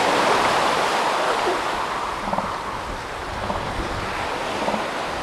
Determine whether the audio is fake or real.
real